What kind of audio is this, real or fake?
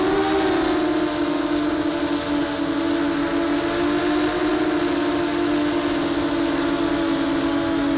real